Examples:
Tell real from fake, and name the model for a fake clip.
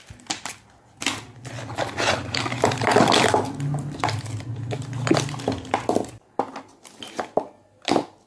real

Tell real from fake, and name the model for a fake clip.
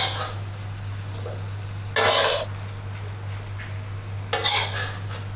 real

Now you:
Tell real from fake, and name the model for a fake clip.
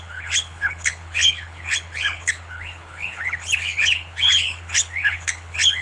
fake, codec, HILCodec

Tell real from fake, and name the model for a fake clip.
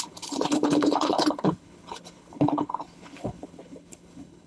fake, codec, HILCodec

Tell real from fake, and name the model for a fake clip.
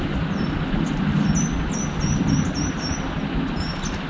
real